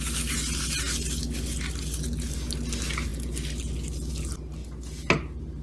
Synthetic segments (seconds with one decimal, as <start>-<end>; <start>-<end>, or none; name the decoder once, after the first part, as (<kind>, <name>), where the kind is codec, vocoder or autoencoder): none